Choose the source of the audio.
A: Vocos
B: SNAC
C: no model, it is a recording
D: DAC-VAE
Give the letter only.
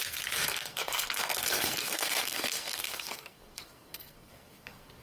B